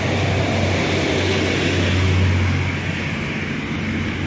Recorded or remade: recorded